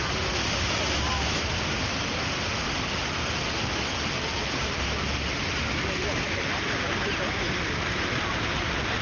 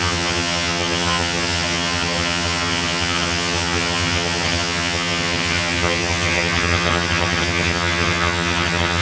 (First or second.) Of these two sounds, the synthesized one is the second